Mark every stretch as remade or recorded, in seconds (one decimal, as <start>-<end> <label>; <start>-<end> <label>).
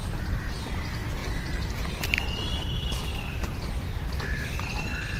0.0-0.5 remade; 0.5-3.1 recorded; 3.1-3.7 remade; 3.7-5.2 recorded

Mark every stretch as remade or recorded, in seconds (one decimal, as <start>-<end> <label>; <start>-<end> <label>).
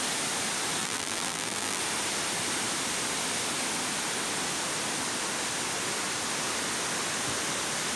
0.0-0.8 recorded; 0.8-1.8 remade; 1.8-8.0 recorded